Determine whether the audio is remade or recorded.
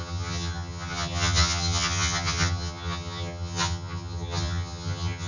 remade